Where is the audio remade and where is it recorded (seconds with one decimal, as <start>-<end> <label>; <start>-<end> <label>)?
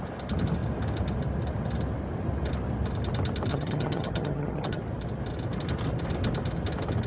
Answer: 0.0-3.5 recorded; 3.5-4.8 remade; 4.8-7.1 recorded